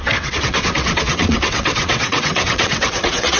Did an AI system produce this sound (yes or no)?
yes